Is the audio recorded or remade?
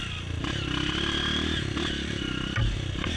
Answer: recorded